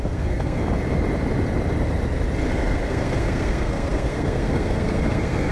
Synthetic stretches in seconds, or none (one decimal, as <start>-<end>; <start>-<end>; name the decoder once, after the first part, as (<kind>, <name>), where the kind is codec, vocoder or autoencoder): 0.0-0.6 (codec, SNAC); 2.5-5.5